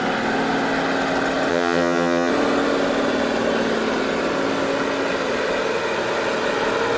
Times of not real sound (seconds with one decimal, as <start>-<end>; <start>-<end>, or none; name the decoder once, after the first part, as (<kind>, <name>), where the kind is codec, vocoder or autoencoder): 1.5-2.3 (vocoder, HiFi-GAN)